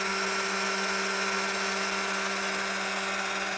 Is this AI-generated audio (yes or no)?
no